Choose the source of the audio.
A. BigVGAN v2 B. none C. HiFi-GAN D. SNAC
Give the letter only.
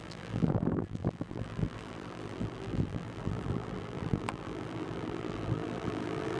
A